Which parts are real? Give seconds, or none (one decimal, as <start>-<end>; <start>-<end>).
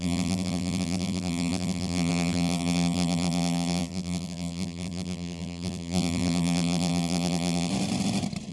7.7-8.5